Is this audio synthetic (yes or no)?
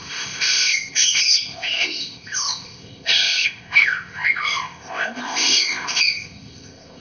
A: yes